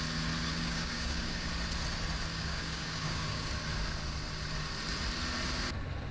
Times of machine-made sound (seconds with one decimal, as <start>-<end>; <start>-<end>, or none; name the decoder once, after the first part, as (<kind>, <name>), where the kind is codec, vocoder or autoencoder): 0.5-1.5 (codec, DAC); 2.3-3.5